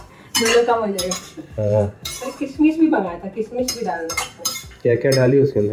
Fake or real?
fake